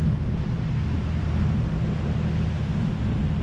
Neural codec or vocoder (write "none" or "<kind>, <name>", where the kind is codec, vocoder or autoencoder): none